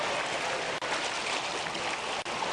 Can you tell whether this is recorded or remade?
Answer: recorded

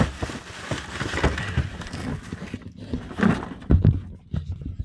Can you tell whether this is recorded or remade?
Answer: recorded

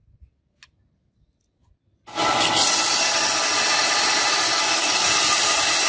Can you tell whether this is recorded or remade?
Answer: recorded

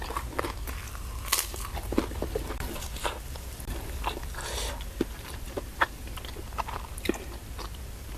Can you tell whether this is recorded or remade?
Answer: remade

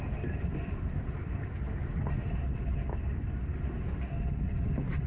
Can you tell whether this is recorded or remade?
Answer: recorded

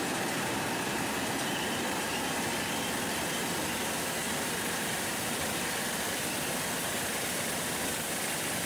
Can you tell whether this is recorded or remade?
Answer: remade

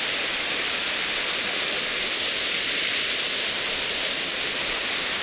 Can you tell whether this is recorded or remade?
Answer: recorded